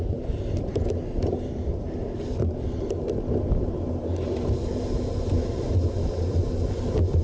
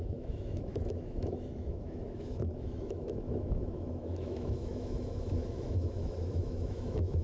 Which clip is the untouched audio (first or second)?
first